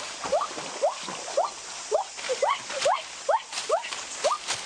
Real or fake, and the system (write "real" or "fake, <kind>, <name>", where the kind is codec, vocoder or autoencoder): real